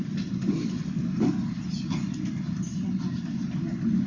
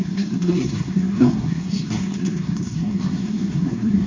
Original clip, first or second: first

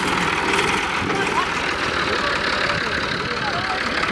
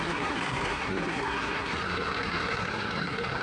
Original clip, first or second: first